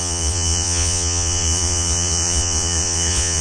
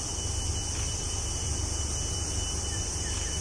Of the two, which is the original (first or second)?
second